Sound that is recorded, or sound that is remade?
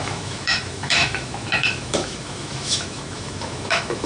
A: remade